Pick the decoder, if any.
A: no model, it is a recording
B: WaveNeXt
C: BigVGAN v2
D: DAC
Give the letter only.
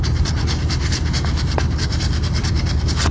C